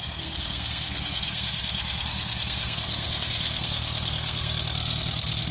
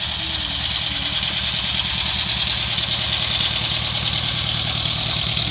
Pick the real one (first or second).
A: second